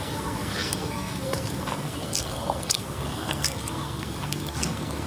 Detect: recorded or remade remade